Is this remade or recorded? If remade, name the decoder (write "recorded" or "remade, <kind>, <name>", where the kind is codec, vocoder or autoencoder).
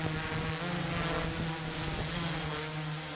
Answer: recorded